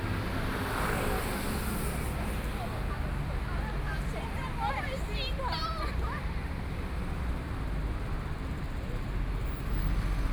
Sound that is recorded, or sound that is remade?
recorded